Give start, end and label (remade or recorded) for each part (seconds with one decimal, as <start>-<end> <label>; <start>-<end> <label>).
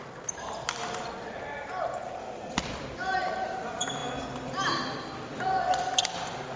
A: 0.0-6.6 recorded